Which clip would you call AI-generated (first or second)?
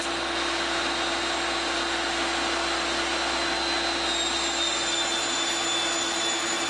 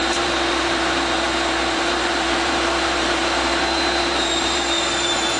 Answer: second